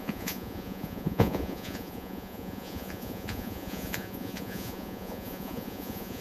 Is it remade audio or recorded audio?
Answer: remade